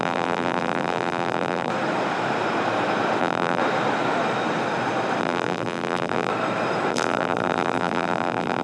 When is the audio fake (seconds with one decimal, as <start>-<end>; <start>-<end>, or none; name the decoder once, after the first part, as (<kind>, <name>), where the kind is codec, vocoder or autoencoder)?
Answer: 0.0-1.7 (vocoder, BigVGAN v2); 3.2-3.6; 5.2-6.3; 6.9-8.6